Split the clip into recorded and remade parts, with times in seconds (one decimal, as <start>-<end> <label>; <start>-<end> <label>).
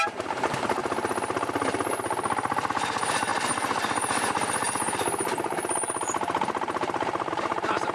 0.0-0.8 remade; 0.8-2.7 recorded; 2.7-3.3 remade; 3.3-7.3 recorded; 7.3-7.9 remade